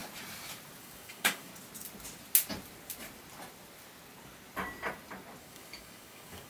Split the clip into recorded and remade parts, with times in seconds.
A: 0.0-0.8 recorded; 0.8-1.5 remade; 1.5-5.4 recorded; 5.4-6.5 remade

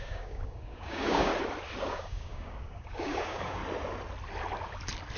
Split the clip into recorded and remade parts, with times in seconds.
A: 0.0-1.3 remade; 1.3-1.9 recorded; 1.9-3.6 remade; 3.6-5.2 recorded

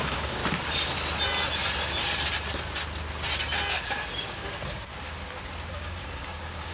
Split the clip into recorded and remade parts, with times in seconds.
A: 0.0-0.4 remade; 0.4-4.1 recorded; 4.1-4.9 remade; 4.9-5.7 recorded; 5.7-6.7 remade

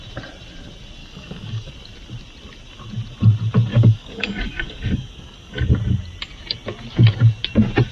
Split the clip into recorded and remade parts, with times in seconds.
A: 0.0-1.0 recorded; 1.0-1.7 remade; 1.7-3.7 recorded; 3.7-5.7 remade; 5.7-7.9 recorded